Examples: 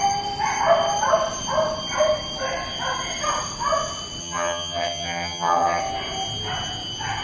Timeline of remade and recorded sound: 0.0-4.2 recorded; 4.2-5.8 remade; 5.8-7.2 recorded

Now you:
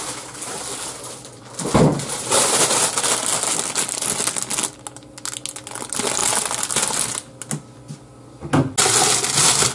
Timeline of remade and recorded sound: 0.0-9.7 recorded